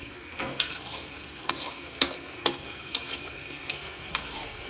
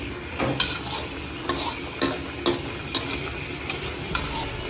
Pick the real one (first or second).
second